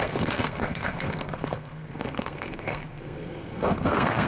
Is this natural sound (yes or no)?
no